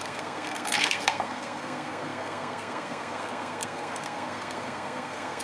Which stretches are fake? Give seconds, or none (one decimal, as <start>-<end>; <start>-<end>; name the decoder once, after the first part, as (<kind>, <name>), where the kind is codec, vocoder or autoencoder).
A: 0.0-5.4 (codec, SNAC)